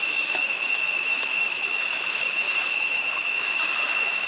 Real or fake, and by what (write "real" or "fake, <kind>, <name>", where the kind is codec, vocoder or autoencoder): fake, autoencoder, DAC-VAE